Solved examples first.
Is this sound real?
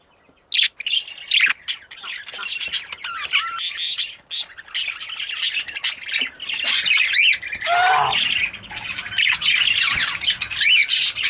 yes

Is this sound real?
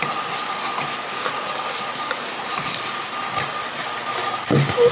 yes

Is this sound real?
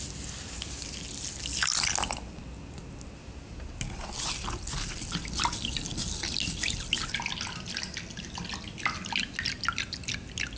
yes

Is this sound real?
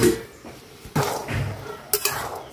yes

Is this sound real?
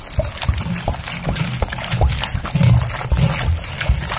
yes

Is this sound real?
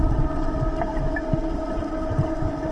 yes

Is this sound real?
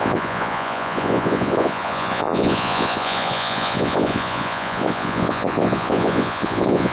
no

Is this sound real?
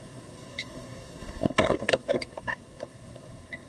no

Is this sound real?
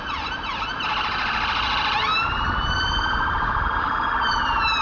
yes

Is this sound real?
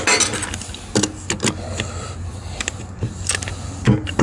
yes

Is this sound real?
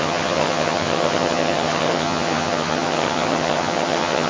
no